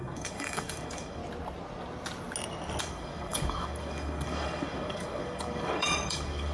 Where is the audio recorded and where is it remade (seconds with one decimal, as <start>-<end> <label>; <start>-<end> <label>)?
0.0-1.2 remade; 1.2-2.8 recorded; 2.8-6.5 remade